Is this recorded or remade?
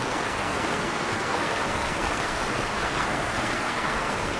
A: remade